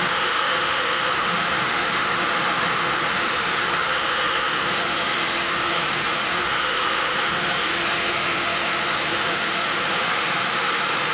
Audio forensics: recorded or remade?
remade